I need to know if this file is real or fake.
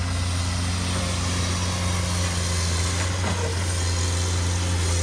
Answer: real